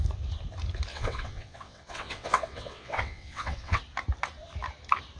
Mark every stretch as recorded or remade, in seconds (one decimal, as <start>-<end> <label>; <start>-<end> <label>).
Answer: 0.0-0.9 recorded; 0.9-3.8 remade; 3.8-5.2 recorded